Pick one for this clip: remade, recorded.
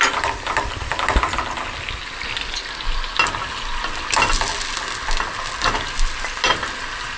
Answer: recorded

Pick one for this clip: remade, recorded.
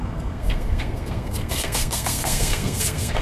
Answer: remade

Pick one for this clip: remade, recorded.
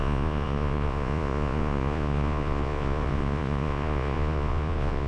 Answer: remade